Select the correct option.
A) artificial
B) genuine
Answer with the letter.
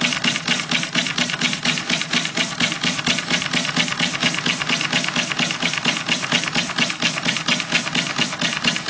B